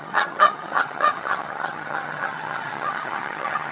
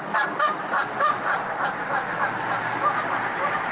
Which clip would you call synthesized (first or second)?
first